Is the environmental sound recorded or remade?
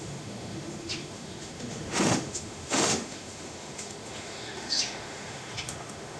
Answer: remade